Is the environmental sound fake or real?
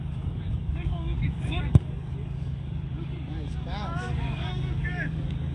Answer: fake